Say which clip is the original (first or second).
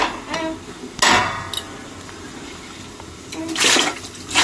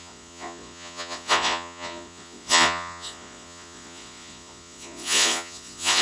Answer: first